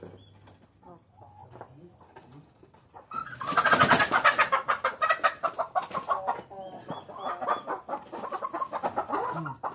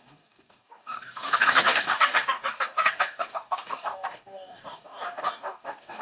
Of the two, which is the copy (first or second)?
second